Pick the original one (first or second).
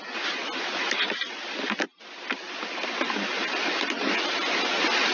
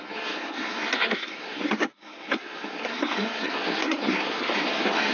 first